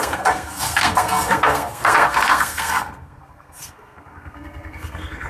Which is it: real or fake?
fake